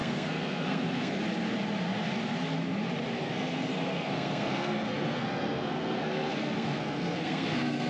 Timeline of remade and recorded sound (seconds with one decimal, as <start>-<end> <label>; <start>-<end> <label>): 0.0-1.2 remade; 1.2-3.2 recorded; 3.2-7.9 remade